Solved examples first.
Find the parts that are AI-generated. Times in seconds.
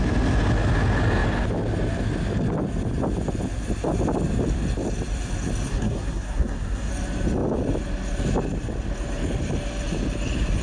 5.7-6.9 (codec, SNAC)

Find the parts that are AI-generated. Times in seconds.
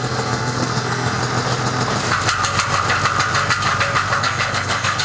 0.0-1.2 (codec, SNAC); 4.2-5.0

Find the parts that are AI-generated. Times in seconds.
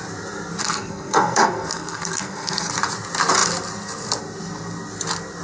0.6-2.7 (codec, SNAC)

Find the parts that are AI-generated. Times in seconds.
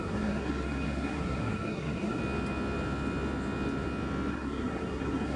0.0-2.2 (codec, SNAC); 4.3-5.4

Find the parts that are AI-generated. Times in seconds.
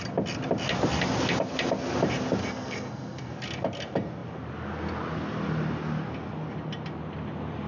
2.4-3.3 (codec, SNAC)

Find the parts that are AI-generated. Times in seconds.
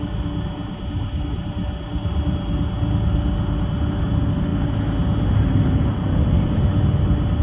none